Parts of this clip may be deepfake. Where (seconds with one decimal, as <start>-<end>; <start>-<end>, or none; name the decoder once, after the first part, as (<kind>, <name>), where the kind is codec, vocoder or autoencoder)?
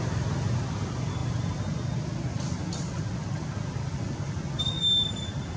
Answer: none